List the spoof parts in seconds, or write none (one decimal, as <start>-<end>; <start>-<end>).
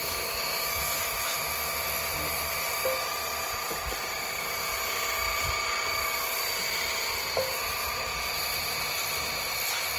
0.0-1.4